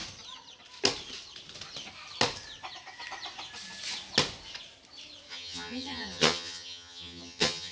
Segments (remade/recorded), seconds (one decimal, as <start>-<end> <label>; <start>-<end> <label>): 0.0-5.3 recorded; 5.3-7.7 remade